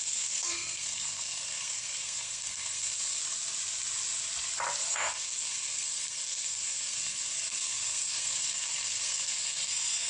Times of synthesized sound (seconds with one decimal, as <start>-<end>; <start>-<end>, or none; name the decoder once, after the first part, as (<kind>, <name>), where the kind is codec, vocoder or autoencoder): 0.0-3.2 (codec, SNAC); 4.9-10.1